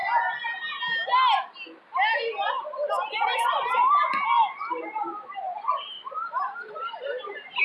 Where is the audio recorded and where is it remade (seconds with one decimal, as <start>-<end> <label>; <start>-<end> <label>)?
0.0-7.6 recorded